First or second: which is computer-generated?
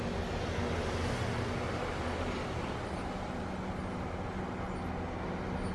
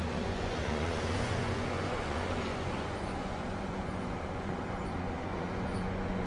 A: second